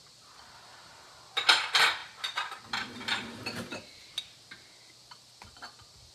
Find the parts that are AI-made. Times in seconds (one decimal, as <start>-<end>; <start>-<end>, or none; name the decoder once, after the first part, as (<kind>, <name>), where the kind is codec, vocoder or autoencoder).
none